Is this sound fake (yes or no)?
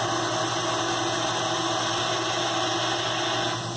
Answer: no